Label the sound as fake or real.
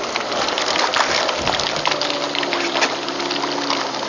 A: real